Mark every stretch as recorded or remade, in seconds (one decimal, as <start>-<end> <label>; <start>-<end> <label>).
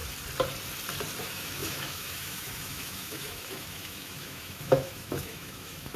0.0-1.2 recorded; 1.2-6.0 remade